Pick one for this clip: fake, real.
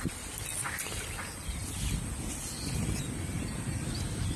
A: real